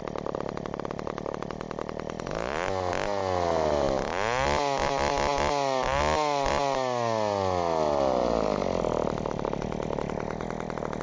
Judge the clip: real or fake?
real